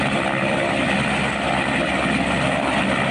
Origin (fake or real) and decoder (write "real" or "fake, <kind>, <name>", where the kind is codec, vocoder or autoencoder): real